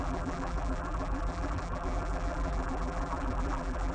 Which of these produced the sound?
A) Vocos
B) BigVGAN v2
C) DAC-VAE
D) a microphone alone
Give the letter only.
B